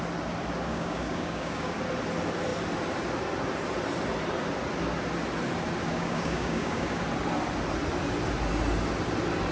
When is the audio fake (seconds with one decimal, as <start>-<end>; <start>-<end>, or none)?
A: 0.7-1.8; 5.9-7.0